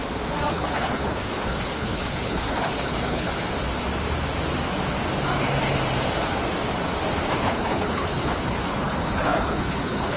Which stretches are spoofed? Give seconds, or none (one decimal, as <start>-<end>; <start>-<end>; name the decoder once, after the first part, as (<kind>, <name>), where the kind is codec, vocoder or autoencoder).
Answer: 0.5-3.3 (codec, HILCodec); 7.3-10.2